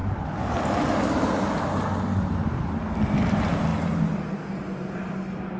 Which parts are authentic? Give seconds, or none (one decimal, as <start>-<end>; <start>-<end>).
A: 0.0-5.6

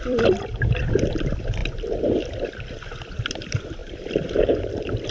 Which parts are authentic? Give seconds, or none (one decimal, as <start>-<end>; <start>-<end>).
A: 1.6-3.1; 3.8-4.6

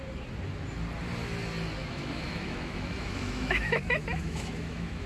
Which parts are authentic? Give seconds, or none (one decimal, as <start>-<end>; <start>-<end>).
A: 0.0-1.8

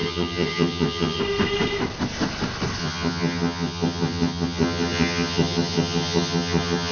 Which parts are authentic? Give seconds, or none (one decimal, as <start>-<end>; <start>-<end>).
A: 1.2-2.8

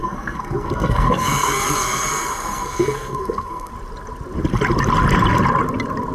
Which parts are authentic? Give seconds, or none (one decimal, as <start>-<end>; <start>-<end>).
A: 3.7-6.1

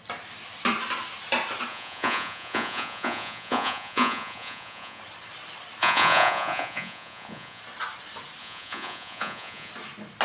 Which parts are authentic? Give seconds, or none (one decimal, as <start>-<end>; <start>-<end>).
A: 0.0-1.7; 5.0-5.8; 7.6-8.4; 9.7-10.2

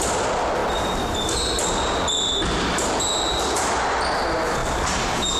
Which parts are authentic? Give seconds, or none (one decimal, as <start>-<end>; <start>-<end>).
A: 0.0-4.6